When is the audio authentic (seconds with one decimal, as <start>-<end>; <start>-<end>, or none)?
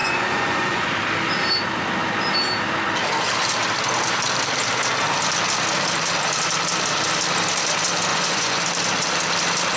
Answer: 0.9-8.1; 8.6-9.8